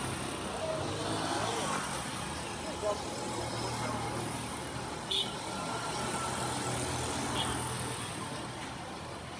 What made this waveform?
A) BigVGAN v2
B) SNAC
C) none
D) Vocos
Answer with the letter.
C